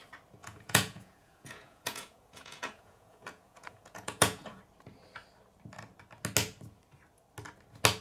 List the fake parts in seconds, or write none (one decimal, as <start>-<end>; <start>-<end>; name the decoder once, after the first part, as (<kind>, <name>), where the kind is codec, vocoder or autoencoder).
0.4-4.6 (vocoder, Vocos)